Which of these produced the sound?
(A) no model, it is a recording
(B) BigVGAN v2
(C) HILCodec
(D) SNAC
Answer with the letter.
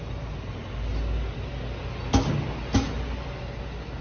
A